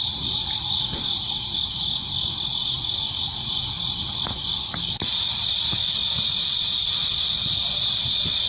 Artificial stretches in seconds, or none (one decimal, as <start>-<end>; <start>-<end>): 4.6-5.1